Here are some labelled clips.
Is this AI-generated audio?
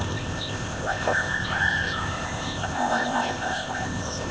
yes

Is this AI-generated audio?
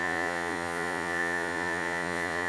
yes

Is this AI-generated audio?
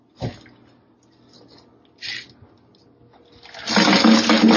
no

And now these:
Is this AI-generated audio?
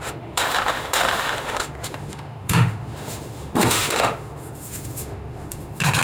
yes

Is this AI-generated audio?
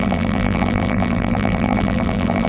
yes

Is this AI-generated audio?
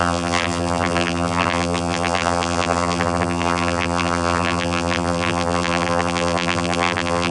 yes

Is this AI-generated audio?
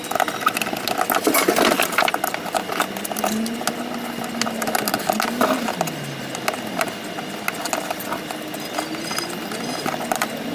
no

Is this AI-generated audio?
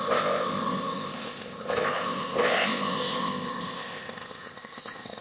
yes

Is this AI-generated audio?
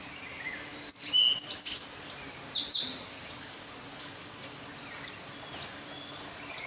no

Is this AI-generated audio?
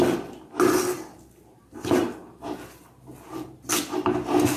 no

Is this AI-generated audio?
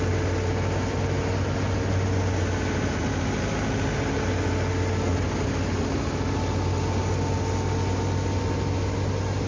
no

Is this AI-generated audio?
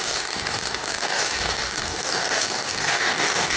yes